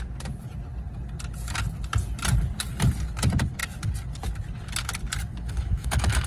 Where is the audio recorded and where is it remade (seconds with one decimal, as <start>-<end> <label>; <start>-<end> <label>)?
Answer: 0.0-5.3 recorded; 5.3-6.3 remade